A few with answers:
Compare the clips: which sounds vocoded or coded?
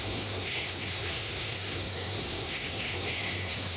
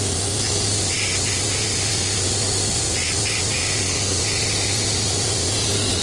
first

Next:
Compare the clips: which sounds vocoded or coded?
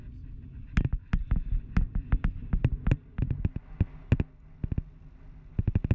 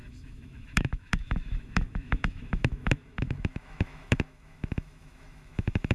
second